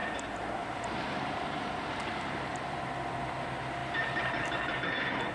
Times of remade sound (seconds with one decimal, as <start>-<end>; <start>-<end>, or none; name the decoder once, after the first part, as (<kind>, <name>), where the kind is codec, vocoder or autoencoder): 0.0-3.2 (vocoder, BigVGAN v2); 3.8-4.7